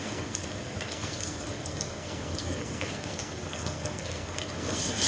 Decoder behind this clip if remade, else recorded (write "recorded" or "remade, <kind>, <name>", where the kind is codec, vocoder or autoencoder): remade, codec, SNAC